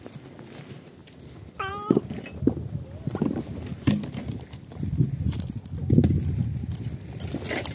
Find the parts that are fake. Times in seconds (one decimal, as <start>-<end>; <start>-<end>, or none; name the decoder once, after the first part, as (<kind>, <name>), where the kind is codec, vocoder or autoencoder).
none